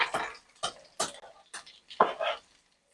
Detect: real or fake real